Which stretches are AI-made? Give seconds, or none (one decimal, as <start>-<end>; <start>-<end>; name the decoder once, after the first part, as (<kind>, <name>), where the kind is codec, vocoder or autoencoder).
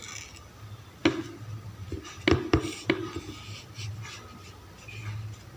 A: none